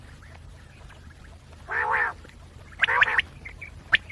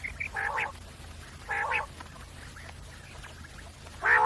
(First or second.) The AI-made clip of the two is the first